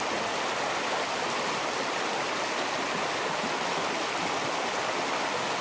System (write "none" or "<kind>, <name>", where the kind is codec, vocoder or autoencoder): none